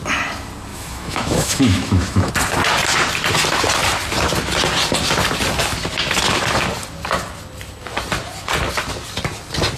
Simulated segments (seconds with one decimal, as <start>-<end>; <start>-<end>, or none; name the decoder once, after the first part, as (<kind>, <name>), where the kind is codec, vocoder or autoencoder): 0.7-2.3 (autoencoder, DAC-VAE)